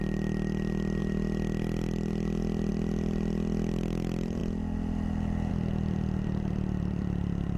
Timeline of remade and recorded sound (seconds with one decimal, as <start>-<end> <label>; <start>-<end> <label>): 0.0-1.0 remade; 1.0-2.7 recorded; 2.7-4.4 remade; 4.4-5.5 recorded; 5.5-7.6 remade